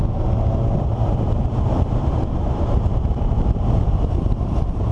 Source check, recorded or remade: remade